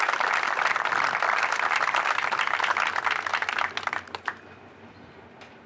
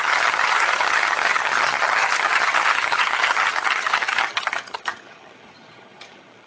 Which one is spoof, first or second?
second